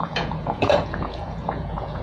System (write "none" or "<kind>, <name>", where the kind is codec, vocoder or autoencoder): vocoder, Vocos